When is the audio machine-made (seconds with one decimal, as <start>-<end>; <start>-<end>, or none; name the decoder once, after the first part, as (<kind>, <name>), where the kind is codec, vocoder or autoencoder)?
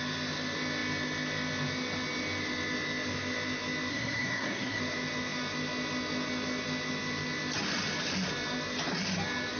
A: 3.9-4.8 (codec, SNAC)